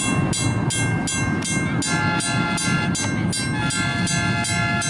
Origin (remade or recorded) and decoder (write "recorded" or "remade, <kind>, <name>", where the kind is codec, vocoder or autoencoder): recorded